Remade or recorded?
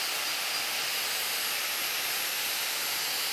recorded